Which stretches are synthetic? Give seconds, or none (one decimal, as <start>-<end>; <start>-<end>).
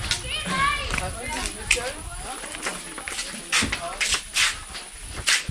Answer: none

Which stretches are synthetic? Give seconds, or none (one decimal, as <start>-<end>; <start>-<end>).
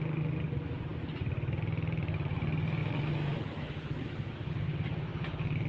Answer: 2.8-4.5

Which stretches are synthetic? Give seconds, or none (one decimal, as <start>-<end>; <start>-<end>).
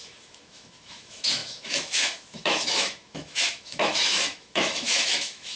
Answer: 0.0-5.6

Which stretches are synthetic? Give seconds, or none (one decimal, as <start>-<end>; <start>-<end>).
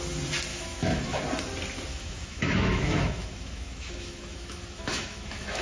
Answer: 0.5-1.2; 1.9-5.6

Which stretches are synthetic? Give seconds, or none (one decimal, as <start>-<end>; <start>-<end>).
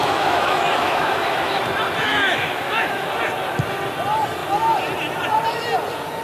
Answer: 0.0-1.6; 2.1-3.1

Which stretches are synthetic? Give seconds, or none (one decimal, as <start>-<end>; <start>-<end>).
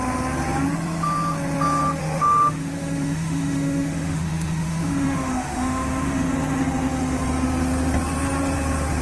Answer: 2.0-6.3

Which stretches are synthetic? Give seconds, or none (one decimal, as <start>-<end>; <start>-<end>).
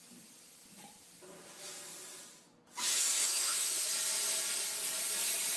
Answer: 2.9-3.9